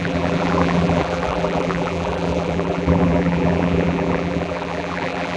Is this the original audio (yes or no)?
no